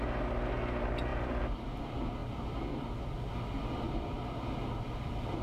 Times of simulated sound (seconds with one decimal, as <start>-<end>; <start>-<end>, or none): none